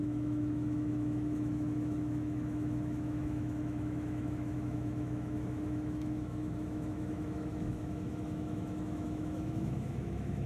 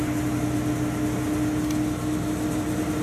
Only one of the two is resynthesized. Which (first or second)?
first